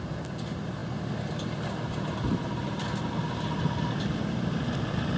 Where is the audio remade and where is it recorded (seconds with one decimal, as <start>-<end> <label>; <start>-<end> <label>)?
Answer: 0.0-5.2 recorded